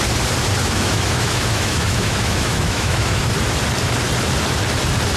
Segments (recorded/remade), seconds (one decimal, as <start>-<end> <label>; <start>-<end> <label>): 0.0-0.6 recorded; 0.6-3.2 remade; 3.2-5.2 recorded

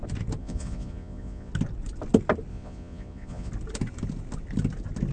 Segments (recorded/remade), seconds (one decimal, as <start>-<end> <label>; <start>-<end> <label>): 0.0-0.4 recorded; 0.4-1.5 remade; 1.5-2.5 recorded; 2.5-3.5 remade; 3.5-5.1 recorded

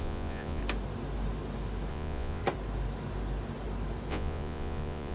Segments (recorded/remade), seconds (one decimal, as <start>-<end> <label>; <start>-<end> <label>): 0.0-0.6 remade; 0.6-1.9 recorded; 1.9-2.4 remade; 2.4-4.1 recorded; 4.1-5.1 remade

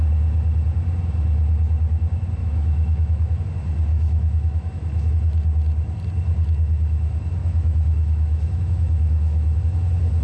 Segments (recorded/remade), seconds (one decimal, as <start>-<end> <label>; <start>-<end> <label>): 0.0-2.4 recorded; 2.4-3.4 remade; 3.4-3.9 recorded; 3.9-5.1 remade; 5.1-7.4 recorded; 7.4-9.6 remade; 9.6-10.2 recorded

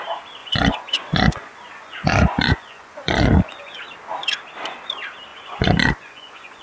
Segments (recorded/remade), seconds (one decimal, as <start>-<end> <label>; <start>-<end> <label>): 0.0-0.4 recorded; 0.4-3.8 remade; 3.8-5.3 recorded; 5.3-6.6 remade

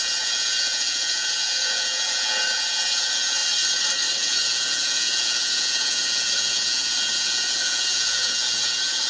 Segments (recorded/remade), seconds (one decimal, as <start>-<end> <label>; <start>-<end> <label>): 0.0-3.4 remade; 3.4-4.2 recorded; 4.2-9.1 remade

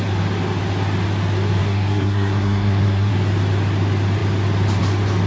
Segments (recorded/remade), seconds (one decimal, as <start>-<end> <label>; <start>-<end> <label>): 0.0-1.6 recorded; 1.6-3.1 remade; 3.1-5.3 recorded